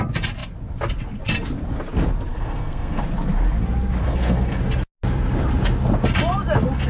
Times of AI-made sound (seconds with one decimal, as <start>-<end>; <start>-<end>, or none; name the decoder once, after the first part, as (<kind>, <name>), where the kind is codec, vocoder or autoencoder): 2.3-3.0 (codec, SNAC); 4.0-4.6